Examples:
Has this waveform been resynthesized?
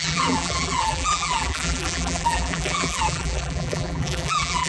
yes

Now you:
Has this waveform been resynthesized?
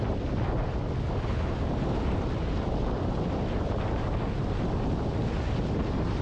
no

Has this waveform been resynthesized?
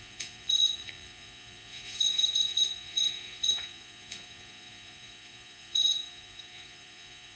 yes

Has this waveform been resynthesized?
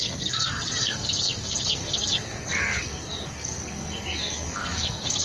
yes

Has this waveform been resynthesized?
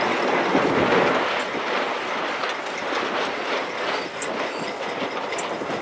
no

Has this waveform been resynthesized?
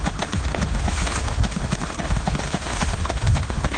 yes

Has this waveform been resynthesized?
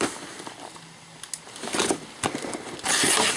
no